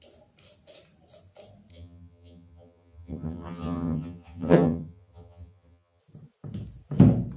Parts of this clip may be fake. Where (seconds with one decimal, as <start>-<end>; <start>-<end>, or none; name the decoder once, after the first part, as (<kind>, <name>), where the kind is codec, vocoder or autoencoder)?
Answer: 1.7-6.0 (vocoder, HiFi-GAN)